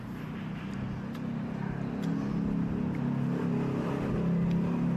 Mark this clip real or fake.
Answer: real